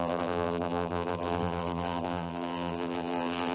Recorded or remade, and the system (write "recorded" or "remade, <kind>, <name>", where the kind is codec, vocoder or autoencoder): remade, vocoder, BigVGAN v2